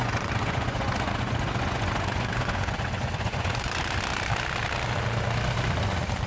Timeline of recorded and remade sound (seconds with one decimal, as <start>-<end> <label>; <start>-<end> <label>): 0.0-3.8 remade; 3.8-6.3 recorded